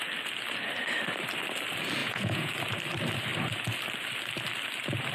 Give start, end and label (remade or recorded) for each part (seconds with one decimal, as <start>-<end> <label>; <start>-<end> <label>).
0.0-2.0 recorded; 2.0-2.5 remade; 2.5-5.1 recorded